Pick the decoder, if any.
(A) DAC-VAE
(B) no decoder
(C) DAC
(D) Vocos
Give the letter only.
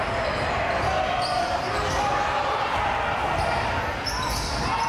B